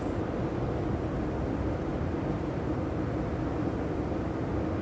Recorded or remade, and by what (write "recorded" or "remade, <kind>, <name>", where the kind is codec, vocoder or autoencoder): recorded